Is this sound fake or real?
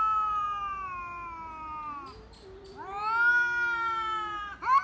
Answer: real